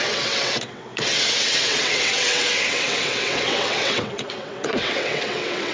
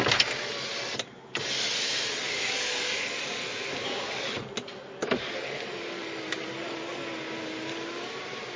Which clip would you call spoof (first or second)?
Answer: first